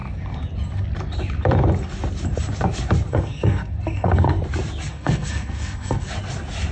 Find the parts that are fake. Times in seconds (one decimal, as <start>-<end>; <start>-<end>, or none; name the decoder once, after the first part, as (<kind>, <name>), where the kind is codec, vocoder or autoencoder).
3.1-4.4 (codec, SNAC); 4.9-6.1